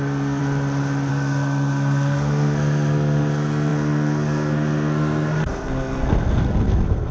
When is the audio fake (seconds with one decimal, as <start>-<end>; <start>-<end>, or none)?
0.0-0.4; 1.1-7.1